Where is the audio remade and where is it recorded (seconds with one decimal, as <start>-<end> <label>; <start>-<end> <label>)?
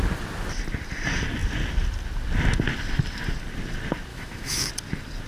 0.0-4.1 recorded; 4.1-4.7 remade; 4.7-5.3 recorded